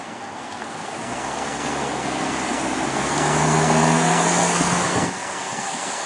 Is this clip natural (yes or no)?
no